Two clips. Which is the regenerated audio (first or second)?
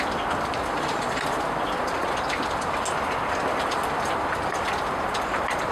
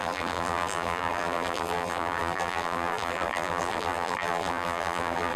second